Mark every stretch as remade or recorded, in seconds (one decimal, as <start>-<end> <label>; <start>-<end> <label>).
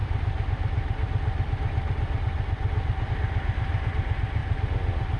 0.0-5.2 recorded